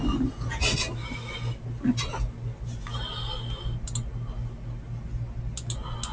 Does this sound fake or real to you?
real